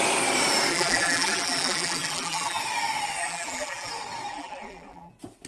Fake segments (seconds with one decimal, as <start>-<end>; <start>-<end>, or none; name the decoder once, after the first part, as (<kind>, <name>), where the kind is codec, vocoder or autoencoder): 0.7-2.6 (vocoder, BigVGAN v2); 3.2-3.9; 4.3-5.1